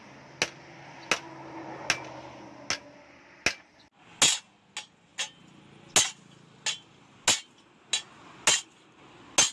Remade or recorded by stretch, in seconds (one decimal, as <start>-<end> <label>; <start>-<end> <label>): 0.0-9.5 recorded